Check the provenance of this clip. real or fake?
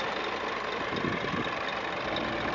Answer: real